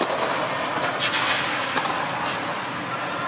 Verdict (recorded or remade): recorded